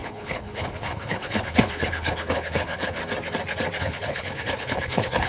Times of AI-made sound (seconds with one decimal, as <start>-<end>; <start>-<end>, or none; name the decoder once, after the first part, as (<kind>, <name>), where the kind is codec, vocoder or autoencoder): 0.0-3.0 (codec, HILCodec); 3.8-5.3